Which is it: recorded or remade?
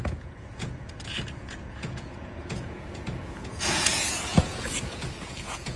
remade